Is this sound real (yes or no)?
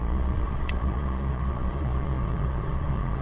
no